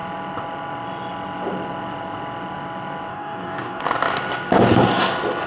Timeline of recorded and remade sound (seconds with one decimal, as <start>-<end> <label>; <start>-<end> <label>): 0.0-3.1 recorded; 3.1-3.8 remade; 3.8-5.5 recorded